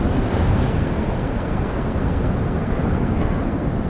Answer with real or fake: fake